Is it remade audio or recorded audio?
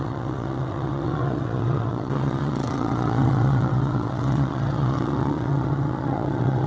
remade